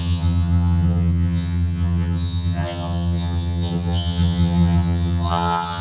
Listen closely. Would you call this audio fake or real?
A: fake